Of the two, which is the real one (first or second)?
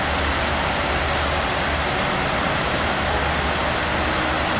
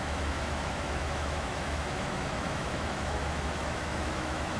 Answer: first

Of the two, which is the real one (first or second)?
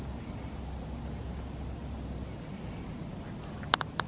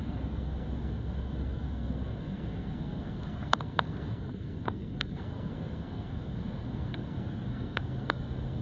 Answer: first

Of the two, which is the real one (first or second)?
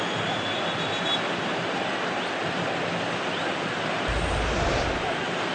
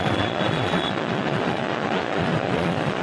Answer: first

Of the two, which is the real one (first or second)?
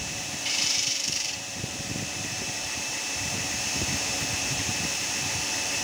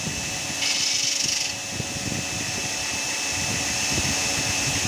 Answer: second